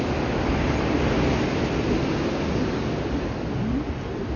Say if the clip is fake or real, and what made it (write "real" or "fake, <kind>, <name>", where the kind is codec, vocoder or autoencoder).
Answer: real